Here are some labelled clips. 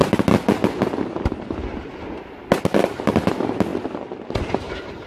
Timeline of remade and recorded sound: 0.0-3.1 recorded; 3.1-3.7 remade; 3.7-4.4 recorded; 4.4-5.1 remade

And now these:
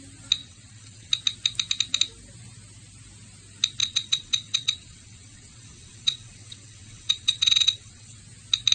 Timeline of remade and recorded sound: 0.0-0.4 recorded; 0.4-1.1 remade; 1.1-3.8 recorded; 3.8-8.2 remade; 8.2-8.7 recorded